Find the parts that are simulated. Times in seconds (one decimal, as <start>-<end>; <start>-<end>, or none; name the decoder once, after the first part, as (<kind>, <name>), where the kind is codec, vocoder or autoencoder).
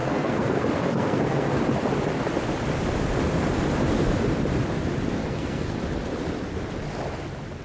0.0-1.6 (codec, SNAC); 5.2-5.8